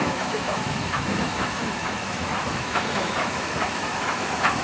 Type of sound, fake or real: fake